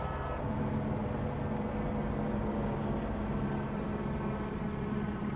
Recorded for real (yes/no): yes